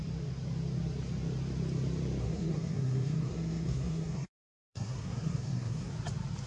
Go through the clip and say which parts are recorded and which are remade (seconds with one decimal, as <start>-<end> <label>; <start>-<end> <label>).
0.0-2.2 recorded; 2.2-5.9 remade; 5.9-6.5 recorded